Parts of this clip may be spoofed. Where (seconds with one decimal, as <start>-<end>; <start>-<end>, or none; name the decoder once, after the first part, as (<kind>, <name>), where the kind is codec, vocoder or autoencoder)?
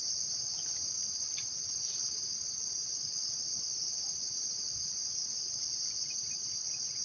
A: 2.8-4.4 (vocoder, BigVGAN v2); 5.3-6.4